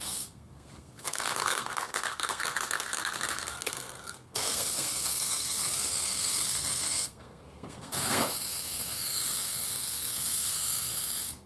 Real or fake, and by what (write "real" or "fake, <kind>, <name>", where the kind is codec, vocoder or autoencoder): fake, codec, SNAC